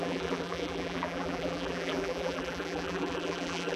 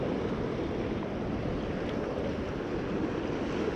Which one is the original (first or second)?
second